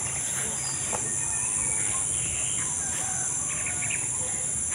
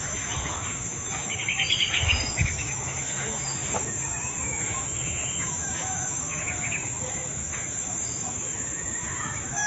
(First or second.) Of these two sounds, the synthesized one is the second